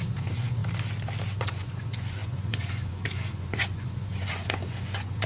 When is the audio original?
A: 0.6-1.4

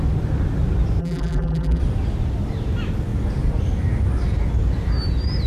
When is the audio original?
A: 0.0-1.0; 1.8-5.5

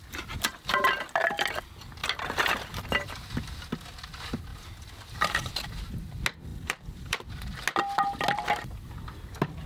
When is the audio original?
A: 0.0-2.0; 2.8-4.5; 5.5-6.5; 7.3-9.7

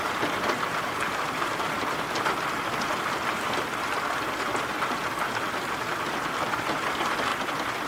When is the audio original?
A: 0.0-7.9

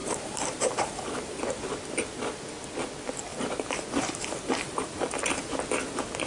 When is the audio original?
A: 1.4-3.3; 5.6-6.3

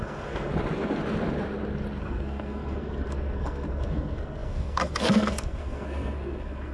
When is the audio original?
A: 0.5-2.0